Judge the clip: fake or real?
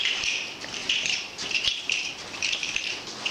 fake